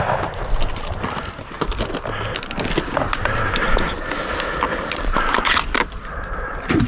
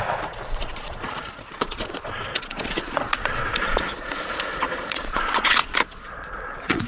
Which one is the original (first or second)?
first